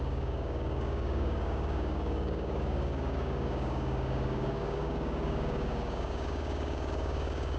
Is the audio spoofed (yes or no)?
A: yes